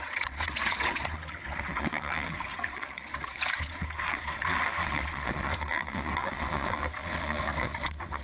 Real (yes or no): no